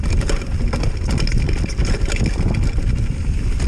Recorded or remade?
recorded